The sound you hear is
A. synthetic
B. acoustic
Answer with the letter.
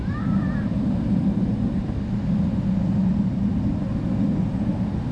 B